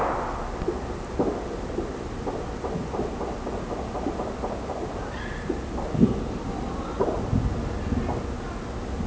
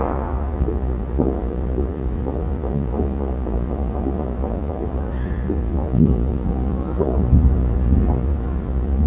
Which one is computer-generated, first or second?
second